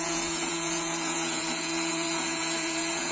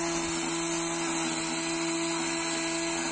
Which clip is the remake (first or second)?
first